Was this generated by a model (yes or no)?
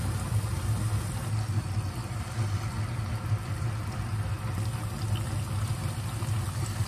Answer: no